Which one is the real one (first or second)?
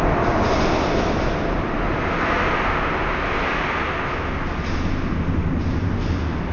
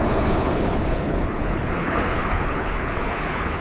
first